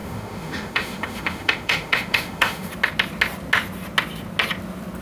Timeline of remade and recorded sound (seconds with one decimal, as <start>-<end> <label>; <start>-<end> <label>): 0.0-2.7 remade; 2.7-5.0 recorded